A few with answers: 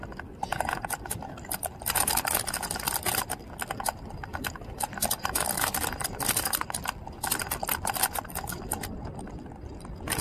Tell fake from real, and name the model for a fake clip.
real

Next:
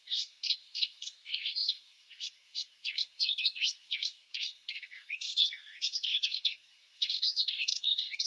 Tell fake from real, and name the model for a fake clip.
fake, codec, SNAC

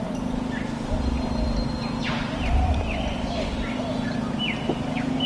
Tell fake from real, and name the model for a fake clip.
real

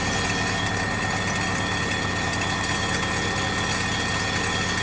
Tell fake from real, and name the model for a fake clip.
real